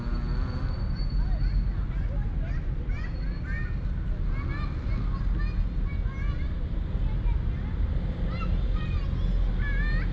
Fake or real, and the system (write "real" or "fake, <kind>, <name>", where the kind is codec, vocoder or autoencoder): real